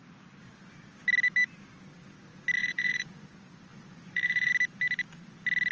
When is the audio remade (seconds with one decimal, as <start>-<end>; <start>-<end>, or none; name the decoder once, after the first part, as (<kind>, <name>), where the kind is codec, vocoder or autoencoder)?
2.6-3.3 (vocoder, Vocos); 3.7-4.5